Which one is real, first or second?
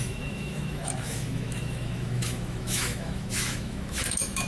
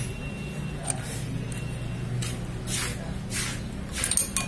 second